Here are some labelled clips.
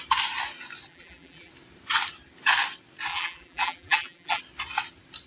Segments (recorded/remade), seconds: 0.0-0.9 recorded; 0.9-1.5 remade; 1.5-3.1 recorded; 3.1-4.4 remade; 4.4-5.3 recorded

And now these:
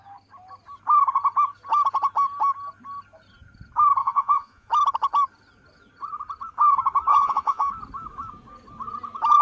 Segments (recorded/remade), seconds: 0.0-4.0 recorded; 4.0-4.7 remade; 4.7-7.1 recorded; 7.1-7.7 remade; 7.7-9.4 recorded

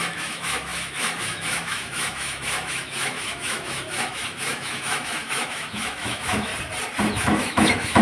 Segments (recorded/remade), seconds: 0.0-6.5 remade; 6.5-7.2 recorded; 7.2-8.0 remade